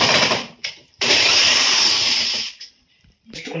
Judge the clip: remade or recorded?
remade